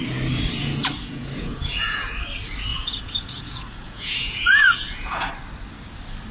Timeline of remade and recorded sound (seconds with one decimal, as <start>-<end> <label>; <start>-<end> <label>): 0.0-0.6 recorded; 0.6-2.1 remade; 2.1-2.7 recorded; 2.7-5.3 remade; 5.3-6.3 recorded

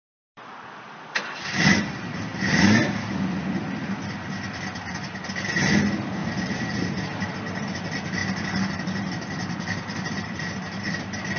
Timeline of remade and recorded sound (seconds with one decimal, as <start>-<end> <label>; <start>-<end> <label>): 0.0-1.9 remade; 1.9-2.3 recorded; 2.3-4.6 remade; 4.6-6.2 recorded; 6.2-7.3 remade; 7.3-8.2 recorded; 8.2-10.9 remade; 10.9-11.4 recorded

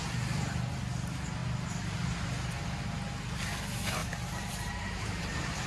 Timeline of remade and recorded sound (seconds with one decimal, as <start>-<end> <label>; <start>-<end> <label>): 0.0-4.0 recorded; 4.0-5.2 remade; 5.2-5.7 recorded

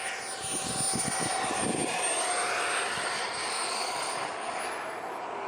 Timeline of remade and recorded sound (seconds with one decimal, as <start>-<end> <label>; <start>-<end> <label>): 0.0-3.4 recorded; 3.4-4.6 remade; 4.6-5.5 recorded

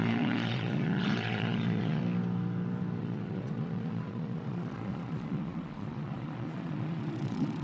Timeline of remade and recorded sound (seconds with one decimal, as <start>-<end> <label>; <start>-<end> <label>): 0.0-2.0 remade; 2.0-3.0 recorded; 3.0-7.6 remade

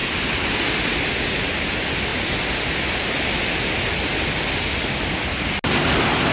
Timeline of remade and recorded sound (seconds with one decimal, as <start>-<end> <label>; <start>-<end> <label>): 0.0-6.3 recorded

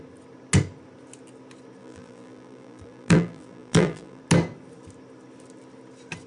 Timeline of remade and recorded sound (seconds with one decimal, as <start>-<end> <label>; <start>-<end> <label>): 0.0-1.8 recorded; 1.8-4.2 remade; 4.2-6.3 recorded

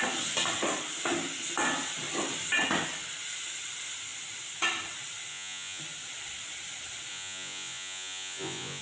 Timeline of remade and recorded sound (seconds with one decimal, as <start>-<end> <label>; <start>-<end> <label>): 0.0-5.3 recorded; 5.3-5.8 remade; 5.8-7.1 recorded; 7.1-8.8 remade